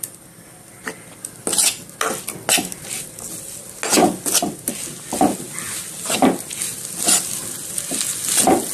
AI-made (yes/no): no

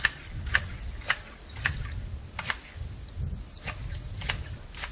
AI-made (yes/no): no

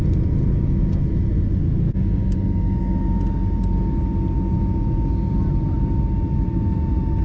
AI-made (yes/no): no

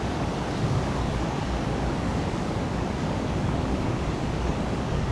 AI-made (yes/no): yes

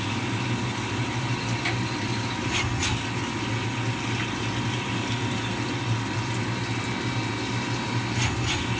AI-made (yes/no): no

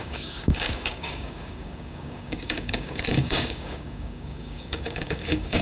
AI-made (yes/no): yes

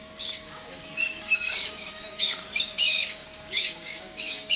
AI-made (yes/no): yes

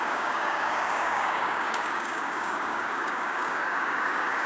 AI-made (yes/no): yes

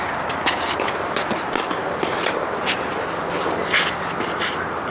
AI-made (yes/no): no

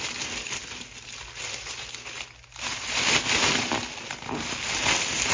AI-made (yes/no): no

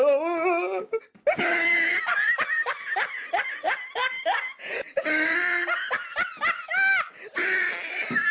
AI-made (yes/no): no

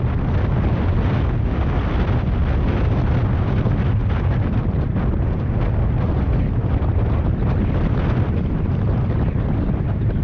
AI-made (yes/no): no